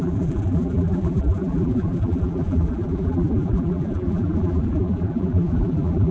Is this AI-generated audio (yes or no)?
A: yes